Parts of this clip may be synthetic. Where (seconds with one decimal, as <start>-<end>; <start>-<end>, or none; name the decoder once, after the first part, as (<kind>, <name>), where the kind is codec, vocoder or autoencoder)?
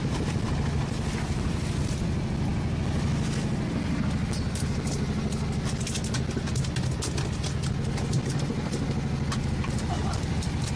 none